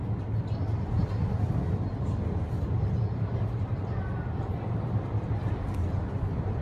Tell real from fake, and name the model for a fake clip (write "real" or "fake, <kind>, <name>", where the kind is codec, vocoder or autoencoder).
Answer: real